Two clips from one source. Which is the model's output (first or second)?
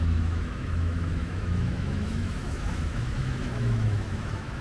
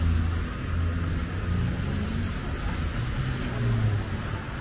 first